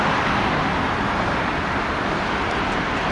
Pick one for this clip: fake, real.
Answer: real